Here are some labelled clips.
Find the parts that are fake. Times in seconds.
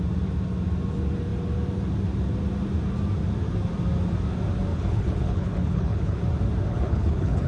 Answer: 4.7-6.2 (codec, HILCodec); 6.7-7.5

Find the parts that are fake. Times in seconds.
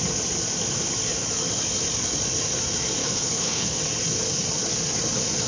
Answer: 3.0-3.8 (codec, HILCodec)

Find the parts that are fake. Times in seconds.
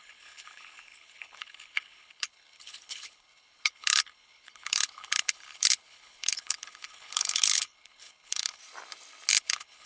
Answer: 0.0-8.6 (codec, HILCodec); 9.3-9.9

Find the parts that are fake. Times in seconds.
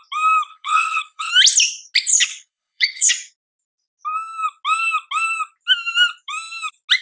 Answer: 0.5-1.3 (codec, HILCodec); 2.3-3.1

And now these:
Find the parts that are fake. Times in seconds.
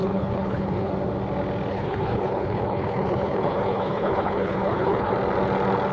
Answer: 0.0-0.9 (codec, HILCodec); 1.7-5.1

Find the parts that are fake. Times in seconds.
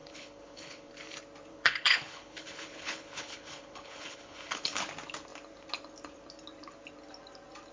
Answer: 0.0-0.9 (codec, HILCodec); 1.5-4.8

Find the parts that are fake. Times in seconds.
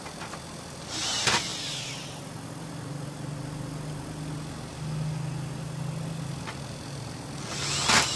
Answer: none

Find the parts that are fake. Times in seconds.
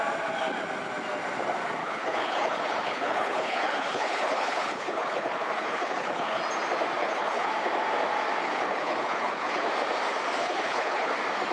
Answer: 1.8-6.4 (codec, HILCodec); 7.0-7.5; 8.4-9.7; 10.4-11.1